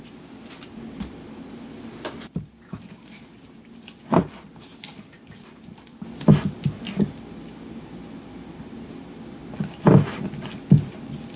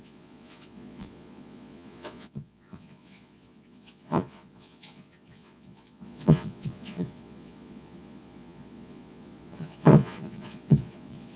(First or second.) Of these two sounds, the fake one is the second